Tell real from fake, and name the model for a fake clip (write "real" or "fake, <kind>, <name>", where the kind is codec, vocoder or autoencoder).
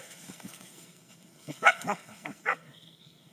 fake, codec, SNAC